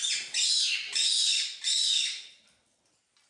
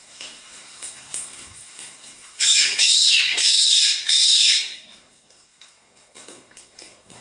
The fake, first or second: second